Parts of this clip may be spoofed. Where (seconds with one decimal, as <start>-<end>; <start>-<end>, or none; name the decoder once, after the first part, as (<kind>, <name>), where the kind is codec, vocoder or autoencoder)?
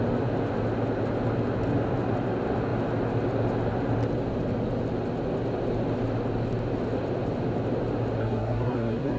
8.2-9.2 (codec, SNAC)